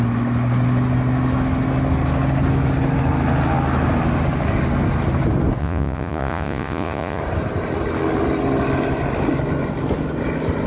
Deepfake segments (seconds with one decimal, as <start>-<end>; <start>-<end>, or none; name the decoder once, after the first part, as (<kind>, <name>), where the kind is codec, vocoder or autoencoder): 5.6-7.2 (vocoder, Vocos)